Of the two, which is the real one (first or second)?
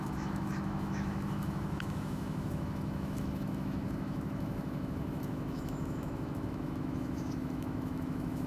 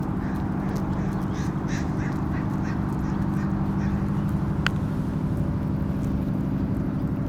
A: second